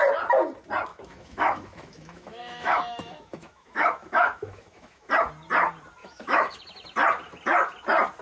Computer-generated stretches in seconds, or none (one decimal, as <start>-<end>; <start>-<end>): 0.9-5.1; 6.0-6.6